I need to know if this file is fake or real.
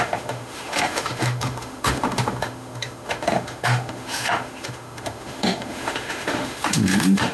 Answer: fake